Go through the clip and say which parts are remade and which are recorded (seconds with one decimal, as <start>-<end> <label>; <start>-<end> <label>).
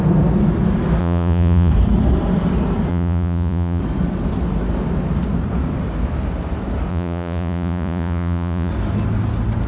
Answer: 0.0-1.0 recorded; 1.0-1.7 remade; 1.7-2.9 recorded; 2.9-3.8 remade; 3.8-6.9 recorded; 6.9-8.7 remade; 8.7-9.7 recorded